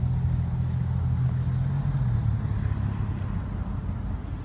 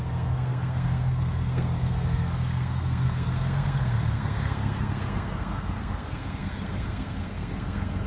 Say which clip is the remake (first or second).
second